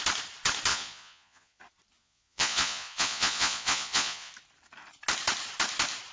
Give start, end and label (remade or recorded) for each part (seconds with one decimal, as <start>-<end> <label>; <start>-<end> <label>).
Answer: 0.0-0.7 recorded; 0.7-1.6 remade; 1.6-2.0 recorded; 2.0-4.3 remade; 4.3-6.1 recorded